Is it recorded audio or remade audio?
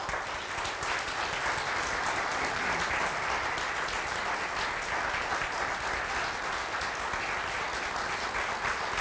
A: recorded